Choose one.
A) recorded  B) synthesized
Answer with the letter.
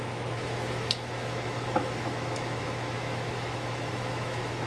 B